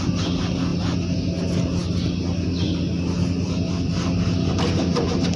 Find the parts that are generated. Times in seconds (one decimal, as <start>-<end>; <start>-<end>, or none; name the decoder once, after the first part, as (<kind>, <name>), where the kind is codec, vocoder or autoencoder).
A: none